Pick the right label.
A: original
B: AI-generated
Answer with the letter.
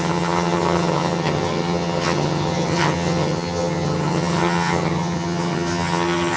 B